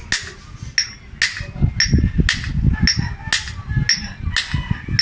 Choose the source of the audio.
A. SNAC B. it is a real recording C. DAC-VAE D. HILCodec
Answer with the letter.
B